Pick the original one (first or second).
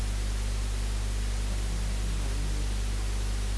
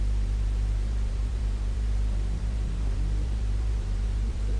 first